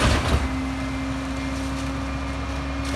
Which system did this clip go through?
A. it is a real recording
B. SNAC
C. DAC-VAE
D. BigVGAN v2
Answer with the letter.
A